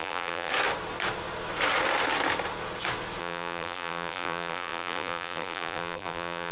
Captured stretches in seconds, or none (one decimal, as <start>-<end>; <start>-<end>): 0.5-3.2